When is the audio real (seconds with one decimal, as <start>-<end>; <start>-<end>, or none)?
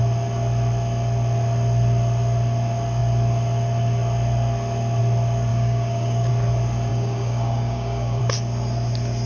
0.0-5.5; 6.3-6.9; 8.2-9.3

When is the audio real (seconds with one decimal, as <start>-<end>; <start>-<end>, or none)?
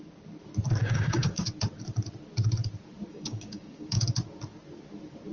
0.0-0.8; 1.4-3.1; 4.0-5.3